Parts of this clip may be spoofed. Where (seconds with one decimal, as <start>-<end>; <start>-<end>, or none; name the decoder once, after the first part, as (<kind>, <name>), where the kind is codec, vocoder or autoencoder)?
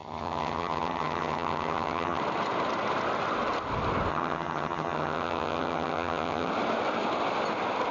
0.0-2.2 (vocoder, HiFi-GAN); 4.1-6.5